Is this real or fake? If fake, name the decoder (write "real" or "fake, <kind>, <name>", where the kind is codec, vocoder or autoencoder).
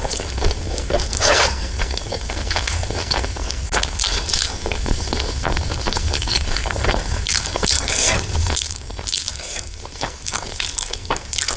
fake, codec, SNAC